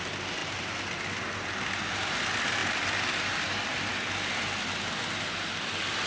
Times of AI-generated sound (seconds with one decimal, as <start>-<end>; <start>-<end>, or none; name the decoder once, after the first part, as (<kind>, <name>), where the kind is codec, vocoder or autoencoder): none